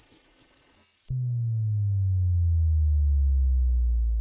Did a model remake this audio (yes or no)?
yes